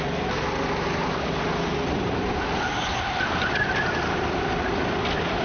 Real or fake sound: real